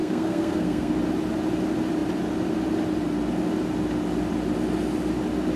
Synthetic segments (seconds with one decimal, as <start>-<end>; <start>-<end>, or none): 0.0-0.9